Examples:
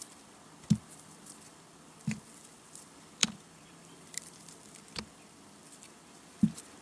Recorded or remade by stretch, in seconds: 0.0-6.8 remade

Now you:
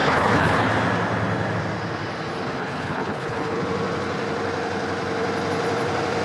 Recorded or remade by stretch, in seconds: 0.0-0.7 remade; 0.7-2.6 recorded; 2.6-3.6 remade; 3.6-6.2 recorded

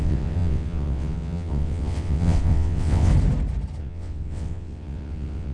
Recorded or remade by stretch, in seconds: 0.0-3.1 remade; 3.1-3.8 recorded; 3.8-5.5 remade

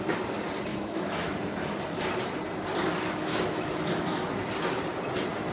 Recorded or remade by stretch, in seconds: 0.0-0.7 recorded; 0.7-1.6 remade; 1.6-3.3 recorded; 3.3-4.3 remade; 4.3-5.5 recorded

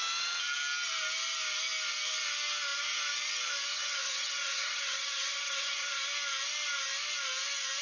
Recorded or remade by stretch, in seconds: 0.0-3.7 recorded; 3.7-6.0 remade; 6.0-7.8 recorded

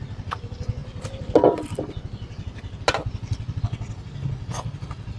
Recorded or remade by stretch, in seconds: 0.0-5.2 recorded

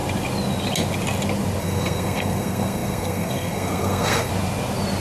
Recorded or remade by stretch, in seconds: 0.0-1.6 recorded; 1.6-4.3 remade; 4.3-5.0 recorded